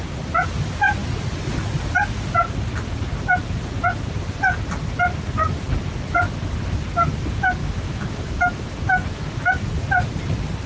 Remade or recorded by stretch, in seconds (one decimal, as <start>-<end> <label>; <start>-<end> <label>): 0.0-7.6 recorded; 7.6-9.8 remade; 9.8-10.7 recorded